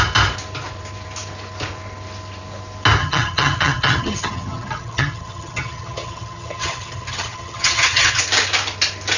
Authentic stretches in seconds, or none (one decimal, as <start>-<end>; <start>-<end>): 0.0-3.0; 8.2-9.2